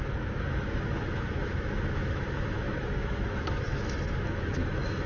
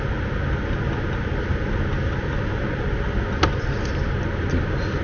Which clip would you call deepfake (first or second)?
first